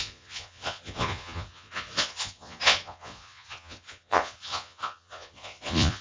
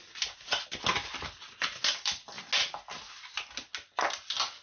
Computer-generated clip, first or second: first